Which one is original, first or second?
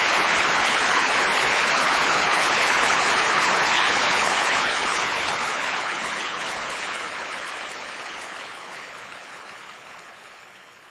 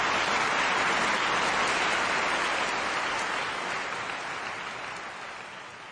second